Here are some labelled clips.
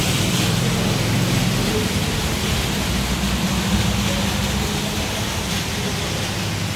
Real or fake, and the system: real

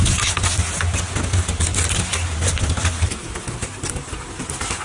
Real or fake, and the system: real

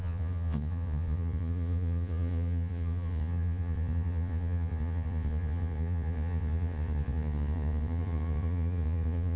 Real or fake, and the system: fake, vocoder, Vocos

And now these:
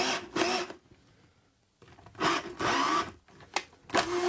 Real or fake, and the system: real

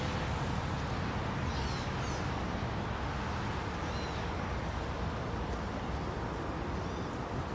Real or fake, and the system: real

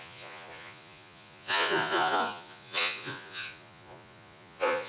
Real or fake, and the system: fake, vocoder, Vocos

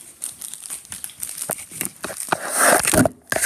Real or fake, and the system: real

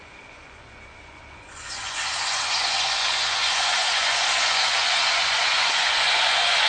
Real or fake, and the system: fake, vocoder, Vocos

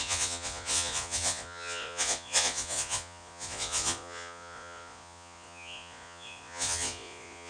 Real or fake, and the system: fake, vocoder, Vocos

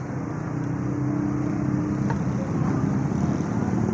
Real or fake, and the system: real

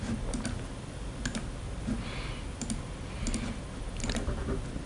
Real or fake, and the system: real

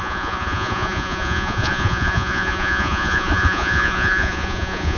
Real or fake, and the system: fake, vocoder, Vocos